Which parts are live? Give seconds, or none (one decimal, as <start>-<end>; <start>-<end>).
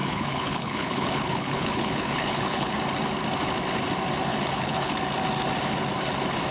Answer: 2.7-4.3; 4.9-6.5